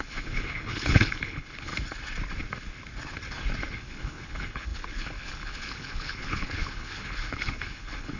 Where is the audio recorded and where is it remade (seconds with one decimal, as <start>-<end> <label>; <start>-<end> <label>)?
0.0-1.7 remade; 1.7-3.7 recorded; 3.7-8.2 remade